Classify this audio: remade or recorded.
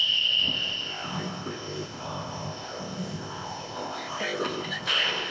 remade